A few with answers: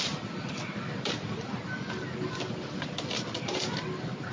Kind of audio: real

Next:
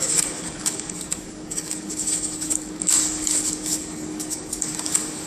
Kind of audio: fake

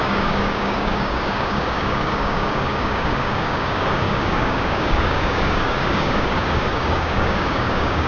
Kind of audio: fake